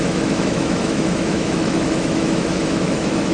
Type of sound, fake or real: fake